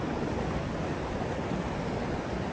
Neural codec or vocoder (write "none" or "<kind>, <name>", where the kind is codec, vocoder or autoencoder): none